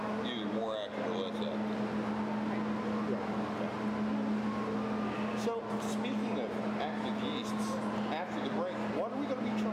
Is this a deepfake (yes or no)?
no